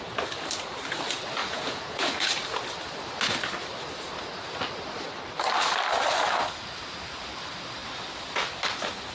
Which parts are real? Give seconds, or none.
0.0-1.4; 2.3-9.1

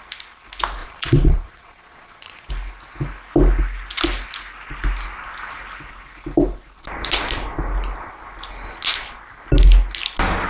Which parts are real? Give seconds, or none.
0.0-0.8; 2.5-10.5

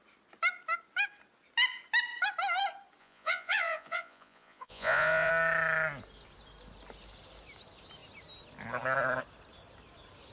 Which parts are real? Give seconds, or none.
0.0-3.0; 5.3-10.3